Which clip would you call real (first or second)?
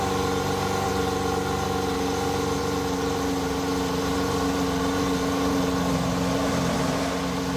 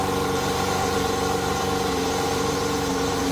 first